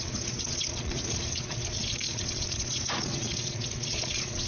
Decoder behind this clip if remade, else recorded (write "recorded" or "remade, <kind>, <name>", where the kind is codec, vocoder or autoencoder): remade, vocoder, Vocos